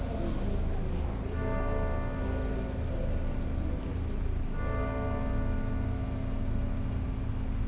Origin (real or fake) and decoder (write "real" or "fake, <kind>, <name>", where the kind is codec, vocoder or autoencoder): real